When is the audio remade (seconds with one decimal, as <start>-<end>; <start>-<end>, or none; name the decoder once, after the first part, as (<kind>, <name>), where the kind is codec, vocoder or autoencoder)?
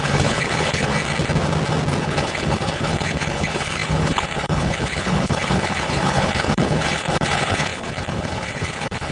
0.0-0.9 (codec, HILCodec); 2.0-9.1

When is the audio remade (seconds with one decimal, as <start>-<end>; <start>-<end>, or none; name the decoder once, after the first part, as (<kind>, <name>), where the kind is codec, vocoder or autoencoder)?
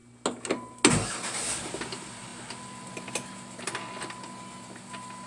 none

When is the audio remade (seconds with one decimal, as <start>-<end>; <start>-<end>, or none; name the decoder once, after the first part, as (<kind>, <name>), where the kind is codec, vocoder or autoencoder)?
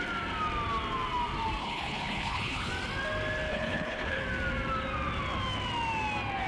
1.6-2.7 (codec, HILCodec); 3.5-4.2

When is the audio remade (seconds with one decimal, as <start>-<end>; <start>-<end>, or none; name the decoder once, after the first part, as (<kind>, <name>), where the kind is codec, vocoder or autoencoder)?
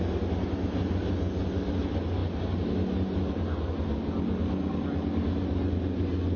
none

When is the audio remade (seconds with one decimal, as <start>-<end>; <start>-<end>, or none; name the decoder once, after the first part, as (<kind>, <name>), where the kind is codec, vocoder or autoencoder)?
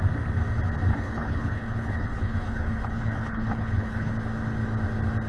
0.9-4.1 (codec, HILCodec)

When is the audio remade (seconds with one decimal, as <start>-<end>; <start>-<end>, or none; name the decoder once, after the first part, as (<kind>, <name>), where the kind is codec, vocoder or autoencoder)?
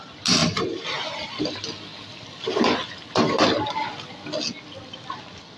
none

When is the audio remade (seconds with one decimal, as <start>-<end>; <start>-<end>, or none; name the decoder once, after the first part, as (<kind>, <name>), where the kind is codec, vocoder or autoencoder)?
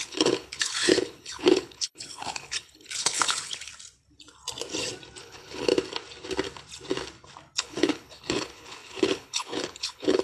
0.0-3.7 (codec, HILCodec); 5.2-5.7; 7.6-10.2